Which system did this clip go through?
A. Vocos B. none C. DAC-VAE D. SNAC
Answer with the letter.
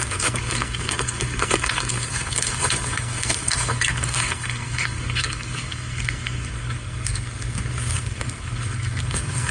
D